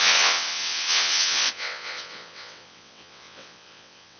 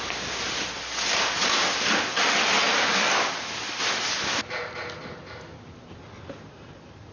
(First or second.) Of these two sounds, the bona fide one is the second